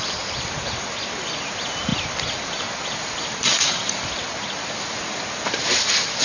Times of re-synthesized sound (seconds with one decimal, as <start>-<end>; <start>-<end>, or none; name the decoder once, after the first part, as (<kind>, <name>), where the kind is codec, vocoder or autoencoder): none